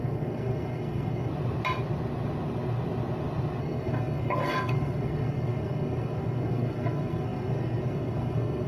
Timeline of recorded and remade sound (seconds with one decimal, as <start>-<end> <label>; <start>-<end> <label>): 0.0-1.3 remade; 1.3-3.6 recorded; 3.6-8.7 remade